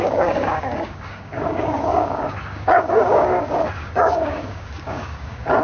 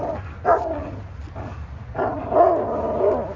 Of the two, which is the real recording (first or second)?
second